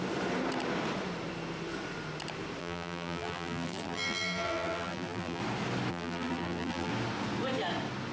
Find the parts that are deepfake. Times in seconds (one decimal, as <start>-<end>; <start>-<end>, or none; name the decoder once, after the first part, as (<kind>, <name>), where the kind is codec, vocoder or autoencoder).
2.6-5.4 (vocoder, BigVGAN v2); 5.9-6.9